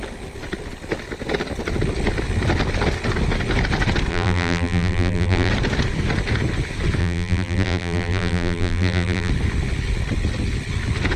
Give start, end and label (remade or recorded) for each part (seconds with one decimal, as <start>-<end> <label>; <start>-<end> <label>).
0.0-4.1 recorded; 4.1-5.5 remade; 5.5-7.0 recorded; 7.0-9.3 remade; 9.3-11.2 recorded